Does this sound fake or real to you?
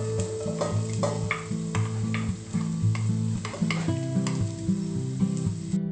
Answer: real